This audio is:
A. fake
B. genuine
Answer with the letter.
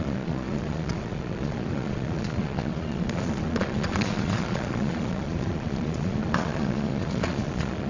A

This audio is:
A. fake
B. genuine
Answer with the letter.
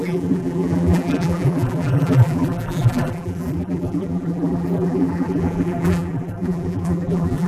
A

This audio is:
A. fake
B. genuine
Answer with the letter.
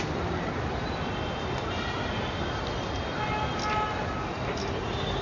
B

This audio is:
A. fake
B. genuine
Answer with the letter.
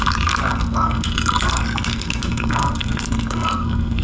A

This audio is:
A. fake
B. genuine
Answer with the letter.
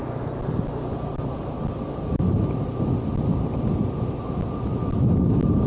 B